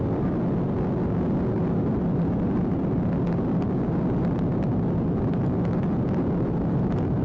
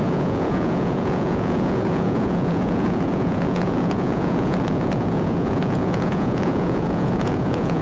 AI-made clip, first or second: second